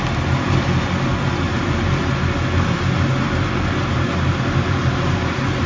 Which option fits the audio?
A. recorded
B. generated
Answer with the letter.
A